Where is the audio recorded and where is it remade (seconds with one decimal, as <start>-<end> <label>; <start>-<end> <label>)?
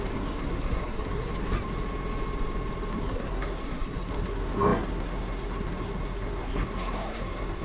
0.0-1.3 remade; 1.3-2.9 recorded; 2.9-7.6 remade